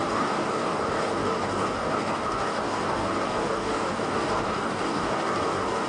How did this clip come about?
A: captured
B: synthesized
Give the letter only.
B